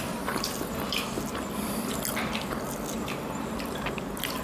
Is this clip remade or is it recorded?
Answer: recorded